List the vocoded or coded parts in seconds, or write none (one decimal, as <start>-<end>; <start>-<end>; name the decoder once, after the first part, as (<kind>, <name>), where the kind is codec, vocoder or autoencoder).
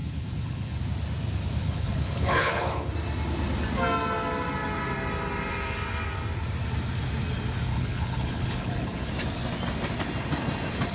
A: 0.0-0.8 (codec, HILCodec); 1.6-2.9; 7.7-9.1